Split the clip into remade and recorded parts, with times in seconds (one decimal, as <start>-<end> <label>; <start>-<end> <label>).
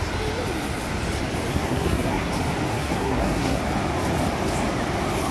0.0-1.5 recorded; 1.5-2.3 remade; 2.3-2.7 recorded; 2.7-3.6 remade; 3.6-5.3 recorded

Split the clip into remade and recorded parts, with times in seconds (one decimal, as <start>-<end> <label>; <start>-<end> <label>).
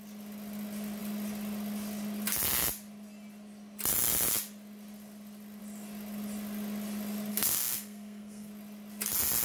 0.0-7.3 recorded; 7.3-8.5 remade; 8.5-9.4 recorded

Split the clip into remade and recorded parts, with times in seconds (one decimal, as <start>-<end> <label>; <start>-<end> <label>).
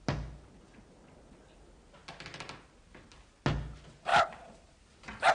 0.0-5.3 recorded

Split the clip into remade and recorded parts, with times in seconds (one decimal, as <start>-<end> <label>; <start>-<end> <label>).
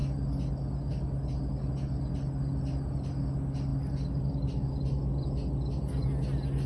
0.0-6.7 recorded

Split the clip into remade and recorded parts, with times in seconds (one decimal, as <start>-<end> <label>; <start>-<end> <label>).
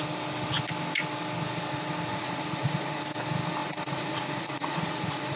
0.0-2.1 recorded; 2.1-3.0 remade; 3.0-3.6 recorded; 3.6-5.4 remade